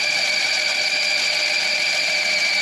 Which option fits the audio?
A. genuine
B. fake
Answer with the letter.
A